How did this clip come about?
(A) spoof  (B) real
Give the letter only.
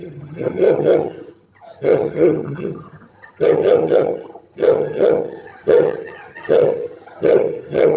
A